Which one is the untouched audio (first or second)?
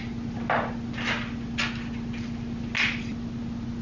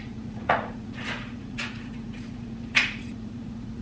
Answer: first